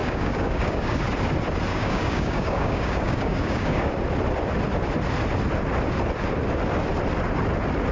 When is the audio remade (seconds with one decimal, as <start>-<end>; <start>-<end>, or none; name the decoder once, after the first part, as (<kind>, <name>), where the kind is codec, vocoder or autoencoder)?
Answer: 0.0-1.0 (codec, DAC); 1.7-3.9